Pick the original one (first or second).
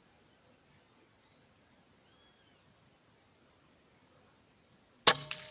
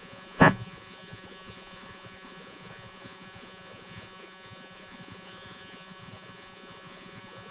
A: first